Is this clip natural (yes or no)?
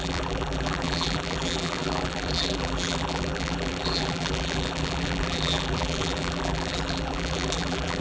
no